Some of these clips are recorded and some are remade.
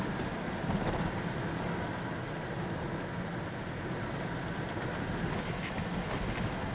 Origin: recorded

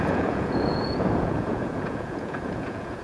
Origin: remade